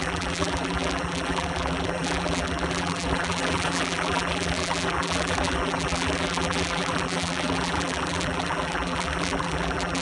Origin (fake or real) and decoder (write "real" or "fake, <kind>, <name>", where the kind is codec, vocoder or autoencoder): fake, vocoder, BigVGAN v2